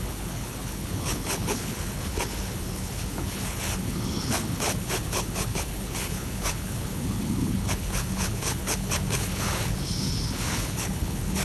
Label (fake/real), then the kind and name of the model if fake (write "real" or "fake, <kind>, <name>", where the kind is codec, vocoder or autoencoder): fake, codec, HILCodec